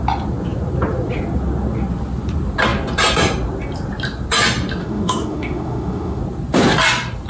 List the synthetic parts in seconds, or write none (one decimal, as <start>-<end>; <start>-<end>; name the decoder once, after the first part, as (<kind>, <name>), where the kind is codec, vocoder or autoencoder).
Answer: 4.8-6.2 (autoencoder, DAC-VAE)